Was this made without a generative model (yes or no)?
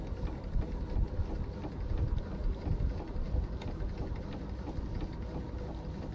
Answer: yes